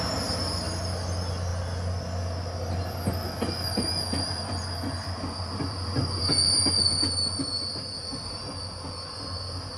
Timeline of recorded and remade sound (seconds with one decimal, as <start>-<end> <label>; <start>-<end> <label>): 0.0-9.8 recorded